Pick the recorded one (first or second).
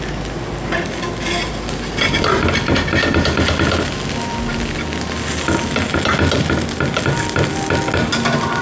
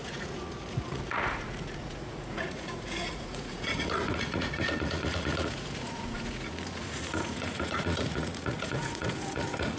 first